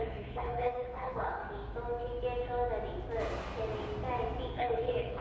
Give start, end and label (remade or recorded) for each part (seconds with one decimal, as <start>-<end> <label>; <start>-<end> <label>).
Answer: 0.0-1.4 remade; 1.4-4.5 recorded; 4.5-5.2 remade